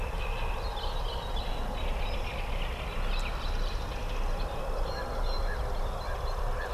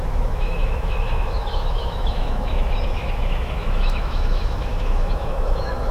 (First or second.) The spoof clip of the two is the second